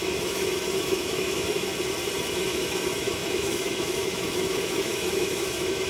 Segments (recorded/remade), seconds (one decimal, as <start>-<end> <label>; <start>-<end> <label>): 0.0-1.7 remade; 1.7-2.3 recorded; 2.3-5.9 remade